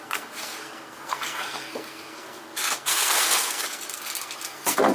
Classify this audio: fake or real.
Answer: fake